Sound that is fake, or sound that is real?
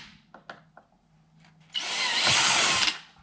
real